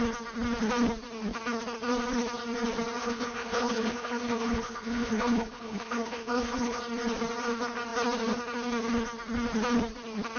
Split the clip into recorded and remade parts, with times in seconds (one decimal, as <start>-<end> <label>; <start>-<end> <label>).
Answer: 0.0-3.0 recorded; 3.0-6.8 remade; 6.8-10.4 recorded